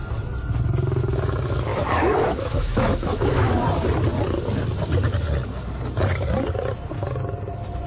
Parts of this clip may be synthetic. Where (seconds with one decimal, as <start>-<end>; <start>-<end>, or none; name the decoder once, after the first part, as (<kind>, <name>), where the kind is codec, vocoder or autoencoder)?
1.7-3.6 (autoencoder, DAC-VAE)